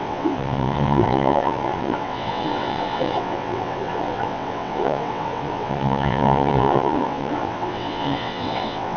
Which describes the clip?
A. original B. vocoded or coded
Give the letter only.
B